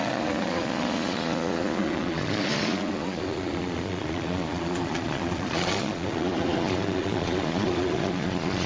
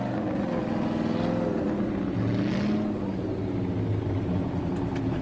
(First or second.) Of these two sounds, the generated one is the first